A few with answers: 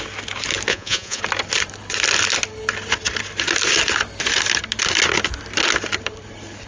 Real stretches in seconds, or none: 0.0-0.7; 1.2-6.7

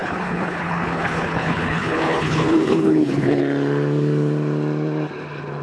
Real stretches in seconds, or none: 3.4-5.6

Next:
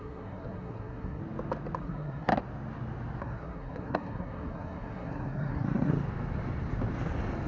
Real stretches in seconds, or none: 1.2-1.8; 2.3-3.2; 5.9-7.5

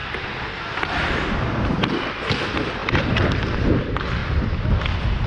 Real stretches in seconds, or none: 2.3-2.8; 3.6-4.2